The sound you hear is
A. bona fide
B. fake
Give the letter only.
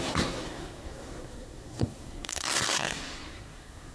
B